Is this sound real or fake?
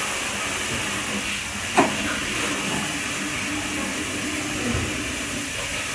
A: real